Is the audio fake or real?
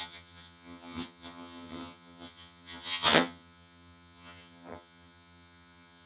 fake